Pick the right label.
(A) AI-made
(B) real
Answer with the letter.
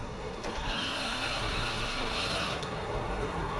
A